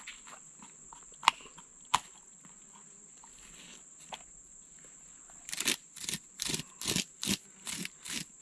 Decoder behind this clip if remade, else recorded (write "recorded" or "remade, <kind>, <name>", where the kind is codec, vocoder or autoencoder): recorded